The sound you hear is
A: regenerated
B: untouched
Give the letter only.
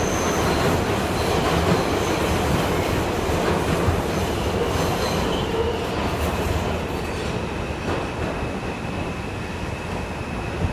B